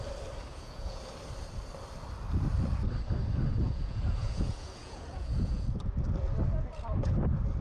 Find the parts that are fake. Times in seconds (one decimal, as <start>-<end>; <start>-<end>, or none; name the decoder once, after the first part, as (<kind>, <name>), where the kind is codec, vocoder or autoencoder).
0.5-1.0 (vocoder, Vocos); 3.5-5.7